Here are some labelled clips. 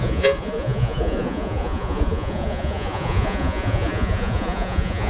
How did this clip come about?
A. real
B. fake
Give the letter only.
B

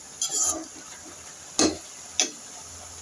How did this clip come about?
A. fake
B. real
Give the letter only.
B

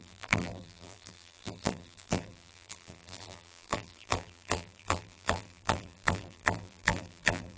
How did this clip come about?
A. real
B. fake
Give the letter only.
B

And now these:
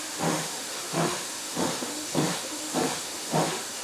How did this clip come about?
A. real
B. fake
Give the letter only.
B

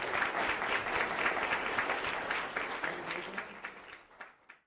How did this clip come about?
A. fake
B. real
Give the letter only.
B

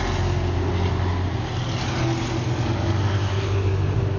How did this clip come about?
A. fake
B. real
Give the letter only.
B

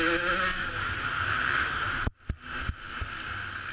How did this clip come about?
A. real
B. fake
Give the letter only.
A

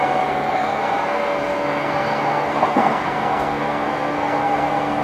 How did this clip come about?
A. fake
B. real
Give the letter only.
A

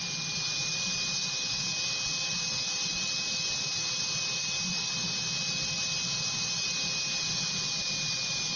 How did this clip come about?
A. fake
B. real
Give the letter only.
B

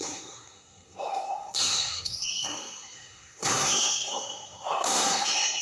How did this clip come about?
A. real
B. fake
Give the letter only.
B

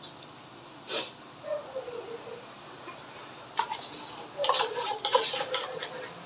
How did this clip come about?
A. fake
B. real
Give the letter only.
A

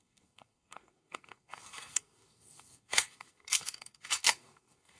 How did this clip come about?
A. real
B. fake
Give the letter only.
B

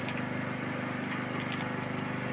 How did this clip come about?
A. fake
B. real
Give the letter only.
B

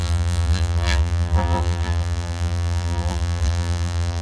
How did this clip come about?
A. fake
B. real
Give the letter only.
A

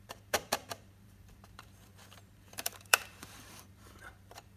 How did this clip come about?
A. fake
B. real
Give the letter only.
A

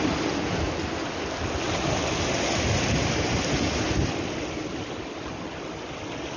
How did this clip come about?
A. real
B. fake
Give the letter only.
A